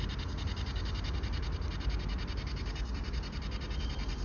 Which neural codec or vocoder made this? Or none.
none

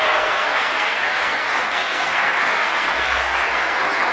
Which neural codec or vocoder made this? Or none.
codec, SNAC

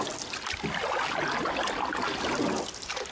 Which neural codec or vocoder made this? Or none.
none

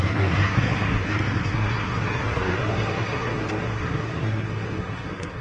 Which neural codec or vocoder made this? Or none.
codec, SNAC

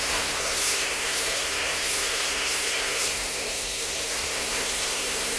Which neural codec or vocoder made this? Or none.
codec, SNAC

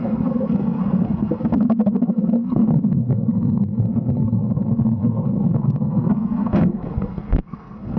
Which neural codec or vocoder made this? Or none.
codec, SNAC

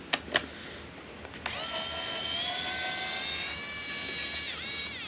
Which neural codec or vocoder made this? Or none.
none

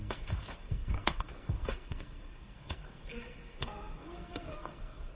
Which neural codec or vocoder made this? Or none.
codec, SNAC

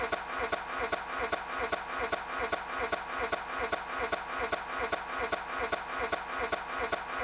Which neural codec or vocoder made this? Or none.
none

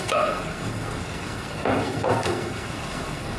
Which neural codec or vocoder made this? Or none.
codec, SNAC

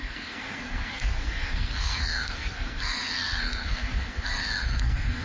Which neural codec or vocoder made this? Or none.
codec, SNAC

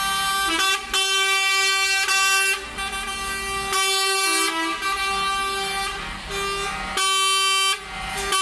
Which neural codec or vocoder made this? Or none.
none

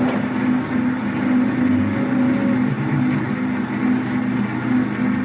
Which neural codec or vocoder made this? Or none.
none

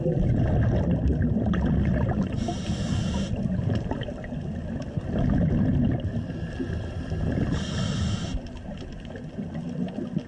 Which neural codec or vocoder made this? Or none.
none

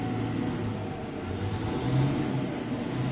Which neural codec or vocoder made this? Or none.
none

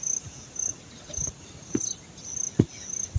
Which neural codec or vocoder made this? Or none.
none